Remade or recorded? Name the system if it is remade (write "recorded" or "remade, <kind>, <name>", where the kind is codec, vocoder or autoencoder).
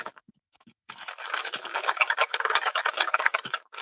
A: remade, autoencoder, DAC-VAE